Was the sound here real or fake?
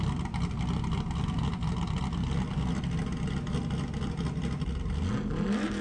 real